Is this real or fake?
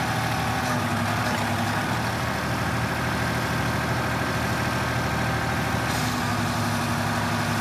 real